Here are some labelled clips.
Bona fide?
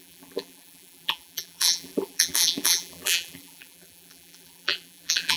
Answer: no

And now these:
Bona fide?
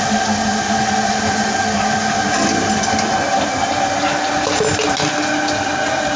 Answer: yes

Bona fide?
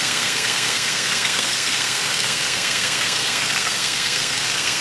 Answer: no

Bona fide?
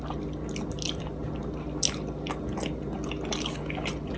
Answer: yes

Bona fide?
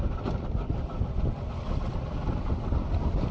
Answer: yes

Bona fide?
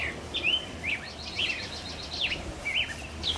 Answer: yes